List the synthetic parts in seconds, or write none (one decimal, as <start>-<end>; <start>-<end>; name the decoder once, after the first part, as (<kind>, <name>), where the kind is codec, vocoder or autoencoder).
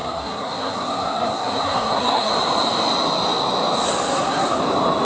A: 0.0-2.3 (codec, SNAC); 4.1-4.6